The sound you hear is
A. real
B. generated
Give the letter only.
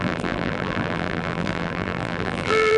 B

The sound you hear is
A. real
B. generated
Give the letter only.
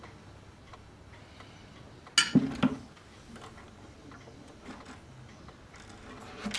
A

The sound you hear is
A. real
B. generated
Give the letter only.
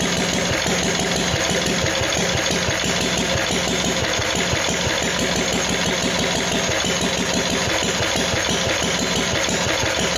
A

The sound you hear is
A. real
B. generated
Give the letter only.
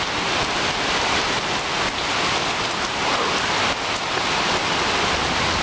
A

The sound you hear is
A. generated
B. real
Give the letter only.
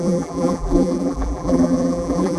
A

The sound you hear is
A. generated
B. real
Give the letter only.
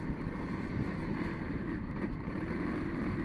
A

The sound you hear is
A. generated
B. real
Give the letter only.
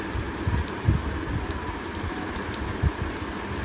B